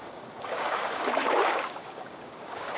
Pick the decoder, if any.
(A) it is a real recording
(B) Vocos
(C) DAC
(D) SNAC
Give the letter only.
C